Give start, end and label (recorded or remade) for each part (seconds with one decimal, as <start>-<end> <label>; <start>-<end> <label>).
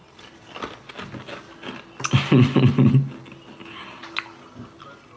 0.0-5.2 recorded